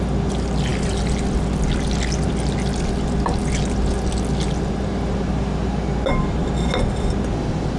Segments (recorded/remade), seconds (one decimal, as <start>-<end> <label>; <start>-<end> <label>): 0.0-7.8 recorded